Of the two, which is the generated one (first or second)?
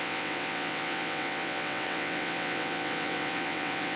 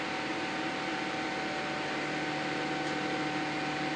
first